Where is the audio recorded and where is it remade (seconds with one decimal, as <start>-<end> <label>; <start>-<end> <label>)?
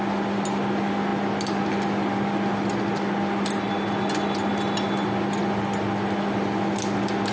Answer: 0.0-7.3 recorded